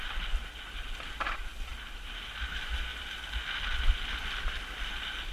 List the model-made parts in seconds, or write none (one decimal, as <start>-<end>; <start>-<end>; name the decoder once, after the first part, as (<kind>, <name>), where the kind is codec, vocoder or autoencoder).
none